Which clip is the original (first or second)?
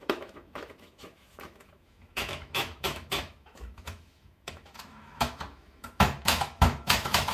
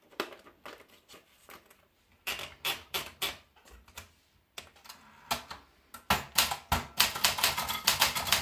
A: second